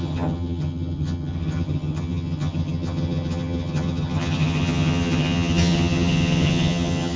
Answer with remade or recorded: remade